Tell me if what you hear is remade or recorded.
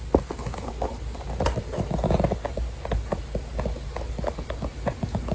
recorded